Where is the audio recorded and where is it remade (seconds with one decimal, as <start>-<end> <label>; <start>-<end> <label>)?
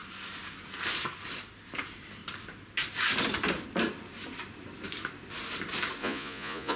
0.0-6.0 recorded; 6.0-6.8 remade